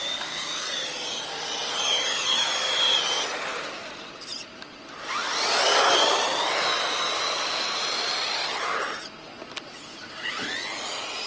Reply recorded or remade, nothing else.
recorded